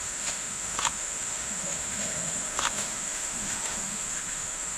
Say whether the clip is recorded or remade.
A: remade